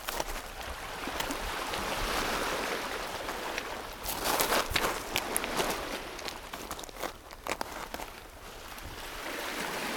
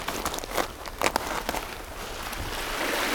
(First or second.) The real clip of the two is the second